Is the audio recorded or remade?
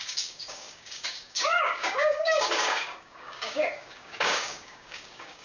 remade